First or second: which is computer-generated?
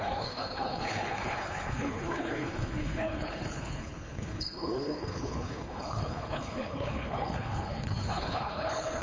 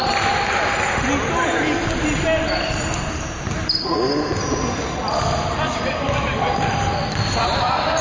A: first